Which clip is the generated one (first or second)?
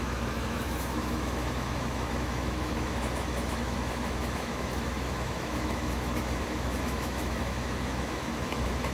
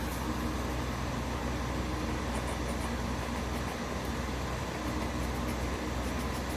first